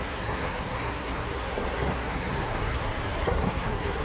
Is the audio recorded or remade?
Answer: remade